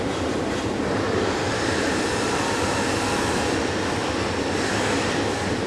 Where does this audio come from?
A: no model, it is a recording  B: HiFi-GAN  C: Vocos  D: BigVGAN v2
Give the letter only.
D